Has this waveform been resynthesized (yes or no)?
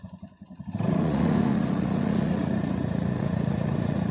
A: yes